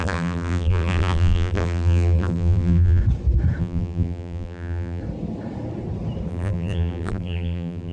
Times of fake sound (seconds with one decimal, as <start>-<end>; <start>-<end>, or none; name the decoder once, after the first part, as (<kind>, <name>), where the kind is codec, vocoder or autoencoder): 0.0-3.0 (vocoder, BigVGAN v2); 3.6-5.0; 6.3-7.9